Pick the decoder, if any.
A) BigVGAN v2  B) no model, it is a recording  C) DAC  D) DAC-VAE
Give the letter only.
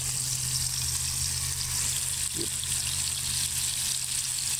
B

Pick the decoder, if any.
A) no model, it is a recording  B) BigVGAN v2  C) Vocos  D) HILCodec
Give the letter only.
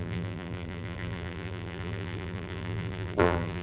B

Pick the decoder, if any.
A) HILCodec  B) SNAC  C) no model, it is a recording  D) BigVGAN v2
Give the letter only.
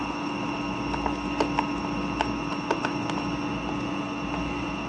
C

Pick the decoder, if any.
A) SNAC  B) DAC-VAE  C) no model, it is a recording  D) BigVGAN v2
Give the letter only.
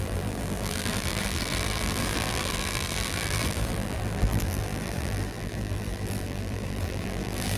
D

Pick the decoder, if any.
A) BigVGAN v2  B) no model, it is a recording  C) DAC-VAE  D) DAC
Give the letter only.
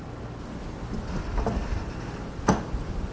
B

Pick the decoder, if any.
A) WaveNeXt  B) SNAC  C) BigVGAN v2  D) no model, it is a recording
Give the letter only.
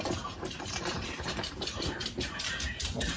C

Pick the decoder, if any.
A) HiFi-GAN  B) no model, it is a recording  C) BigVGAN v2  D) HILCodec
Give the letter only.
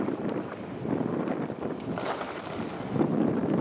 C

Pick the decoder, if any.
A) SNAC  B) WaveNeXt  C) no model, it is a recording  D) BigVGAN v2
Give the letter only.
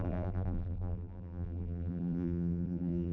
D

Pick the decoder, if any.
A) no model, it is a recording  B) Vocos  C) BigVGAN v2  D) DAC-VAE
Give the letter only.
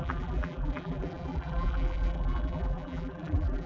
C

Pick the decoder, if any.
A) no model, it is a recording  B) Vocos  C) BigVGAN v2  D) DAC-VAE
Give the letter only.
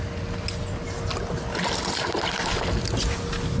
A